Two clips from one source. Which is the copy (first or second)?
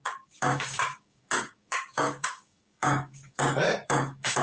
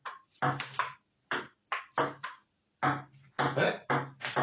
first